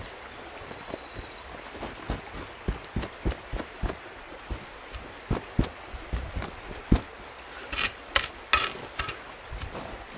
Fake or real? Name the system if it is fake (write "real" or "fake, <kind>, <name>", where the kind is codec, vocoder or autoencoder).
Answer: real